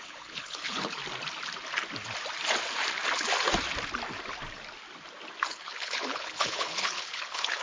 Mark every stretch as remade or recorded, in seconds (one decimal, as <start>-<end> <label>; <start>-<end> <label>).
0.0-1.0 remade; 1.0-5.5 recorded; 5.5-7.6 remade